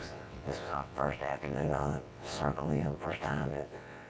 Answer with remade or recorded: remade